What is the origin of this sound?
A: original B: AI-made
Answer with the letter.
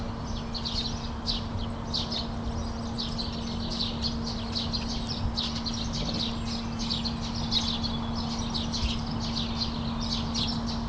A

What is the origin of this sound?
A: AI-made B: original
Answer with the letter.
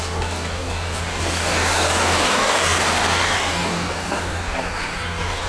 A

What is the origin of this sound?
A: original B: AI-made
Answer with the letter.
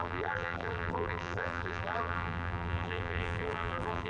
B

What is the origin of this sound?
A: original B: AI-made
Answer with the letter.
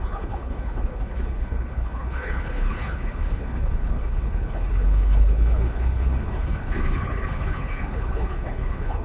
B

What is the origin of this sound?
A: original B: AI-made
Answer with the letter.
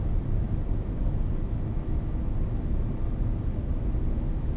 A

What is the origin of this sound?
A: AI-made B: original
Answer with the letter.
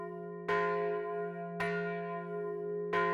B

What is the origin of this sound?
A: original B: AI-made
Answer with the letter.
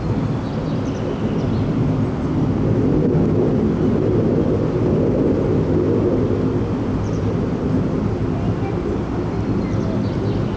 A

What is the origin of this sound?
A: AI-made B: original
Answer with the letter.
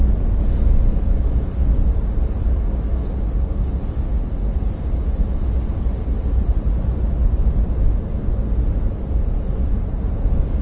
B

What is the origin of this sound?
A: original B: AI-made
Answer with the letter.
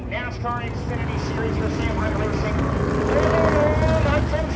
A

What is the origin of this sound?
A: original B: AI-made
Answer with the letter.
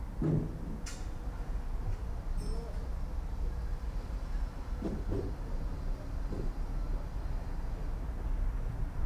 A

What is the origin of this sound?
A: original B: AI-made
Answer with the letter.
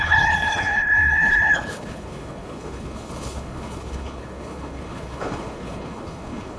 B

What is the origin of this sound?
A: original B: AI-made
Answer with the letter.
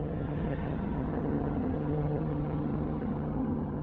B